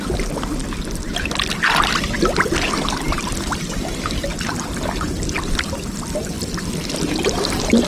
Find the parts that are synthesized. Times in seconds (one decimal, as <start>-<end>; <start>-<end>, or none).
0.6-3.8; 4.3-6.1